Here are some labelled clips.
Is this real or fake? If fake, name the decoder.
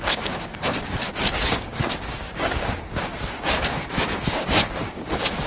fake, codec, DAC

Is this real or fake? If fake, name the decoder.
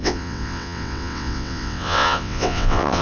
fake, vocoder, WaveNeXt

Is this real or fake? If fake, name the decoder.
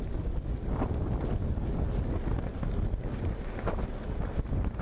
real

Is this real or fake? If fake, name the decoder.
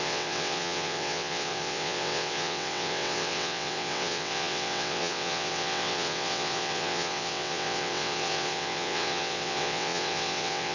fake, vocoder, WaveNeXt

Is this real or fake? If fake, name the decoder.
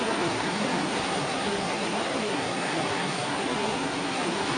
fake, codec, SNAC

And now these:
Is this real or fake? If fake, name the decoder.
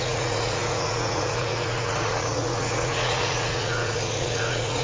fake, vocoder, Vocos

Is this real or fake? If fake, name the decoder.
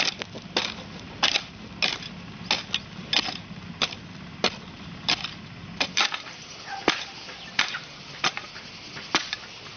real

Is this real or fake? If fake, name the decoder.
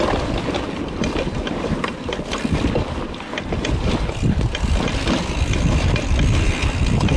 real